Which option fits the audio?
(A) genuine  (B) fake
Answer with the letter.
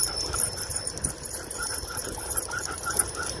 A